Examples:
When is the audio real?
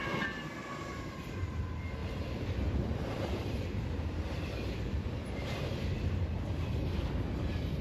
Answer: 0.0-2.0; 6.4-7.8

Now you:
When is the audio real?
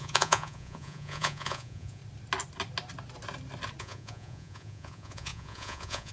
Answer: 2.0-3.8